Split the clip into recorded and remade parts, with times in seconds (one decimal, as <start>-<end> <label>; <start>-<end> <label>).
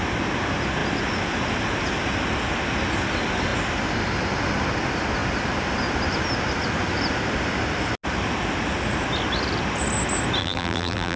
0.0-10.4 recorded; 10.4-11.2 remade